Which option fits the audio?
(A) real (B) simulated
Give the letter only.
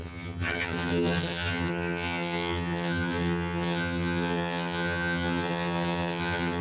B